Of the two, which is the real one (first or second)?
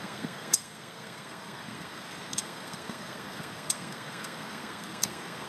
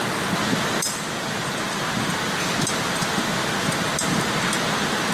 second